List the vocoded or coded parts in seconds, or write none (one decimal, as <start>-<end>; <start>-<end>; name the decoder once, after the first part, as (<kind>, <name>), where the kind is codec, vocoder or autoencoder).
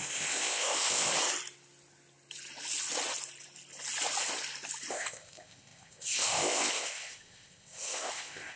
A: 0.0-1.1 (codec, ZipCodec); 4.9-8.6